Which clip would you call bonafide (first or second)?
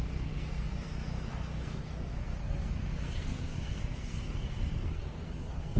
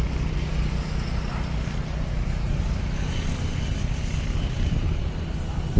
second